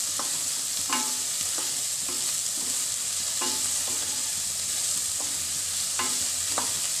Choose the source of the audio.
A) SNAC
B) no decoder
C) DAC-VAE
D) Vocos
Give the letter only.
B